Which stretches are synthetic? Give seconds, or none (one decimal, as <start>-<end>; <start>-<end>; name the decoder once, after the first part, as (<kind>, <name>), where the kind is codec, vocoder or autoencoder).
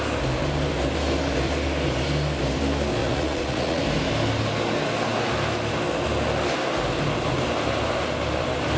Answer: 3.0-3.8 (vocoder, Vocos)